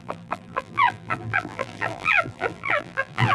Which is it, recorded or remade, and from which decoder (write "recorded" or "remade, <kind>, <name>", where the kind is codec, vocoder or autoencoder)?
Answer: remade, vocoder, BigVGAN v2